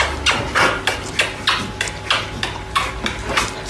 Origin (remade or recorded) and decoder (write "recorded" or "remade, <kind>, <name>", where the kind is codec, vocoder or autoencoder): recorded